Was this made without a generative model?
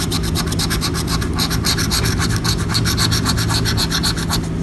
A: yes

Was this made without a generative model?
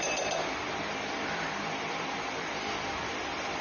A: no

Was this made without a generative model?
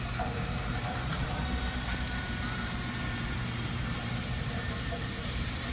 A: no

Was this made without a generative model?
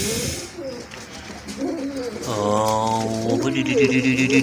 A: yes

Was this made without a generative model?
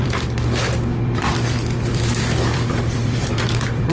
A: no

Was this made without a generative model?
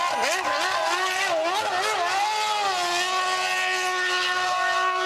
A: yes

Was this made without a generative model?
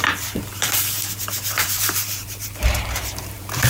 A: no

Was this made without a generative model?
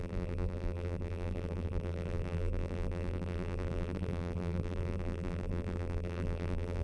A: no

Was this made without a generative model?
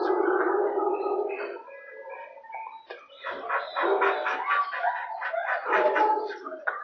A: yes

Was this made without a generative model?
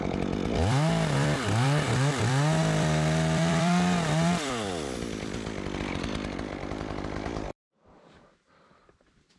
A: no